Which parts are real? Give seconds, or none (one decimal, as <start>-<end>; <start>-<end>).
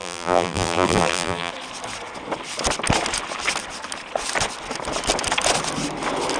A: 1.5-6.4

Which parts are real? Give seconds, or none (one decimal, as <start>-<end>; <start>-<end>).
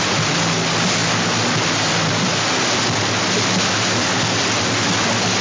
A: 0.0-5.4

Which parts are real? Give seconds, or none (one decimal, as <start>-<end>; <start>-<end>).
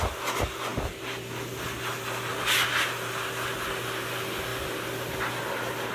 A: 0.0-5.9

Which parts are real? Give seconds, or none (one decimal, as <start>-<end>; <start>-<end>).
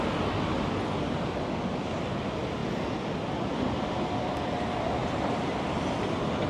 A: 0.0-2.6; 3.2-5.0; 5.7-6.5